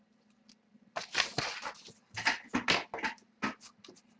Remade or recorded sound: recorded